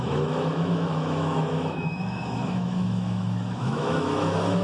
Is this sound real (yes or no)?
no